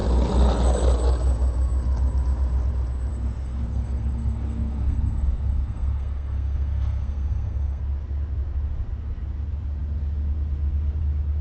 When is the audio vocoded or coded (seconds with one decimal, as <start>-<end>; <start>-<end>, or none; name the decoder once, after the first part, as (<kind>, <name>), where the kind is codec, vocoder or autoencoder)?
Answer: 3.1-7.8 (codec, SNAC)